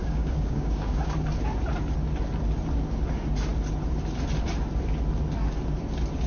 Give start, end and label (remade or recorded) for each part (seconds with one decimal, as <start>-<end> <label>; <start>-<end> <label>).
0.0-1.0 remade; 1.0-6.3 recorded